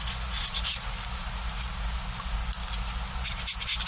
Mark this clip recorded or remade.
recorded